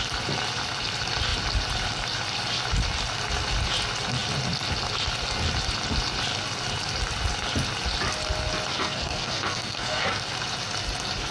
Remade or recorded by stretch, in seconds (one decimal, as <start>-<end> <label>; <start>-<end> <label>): 0.0-8.7 recorded; 8.7-10.2 remade; 10.2-11.3 recorded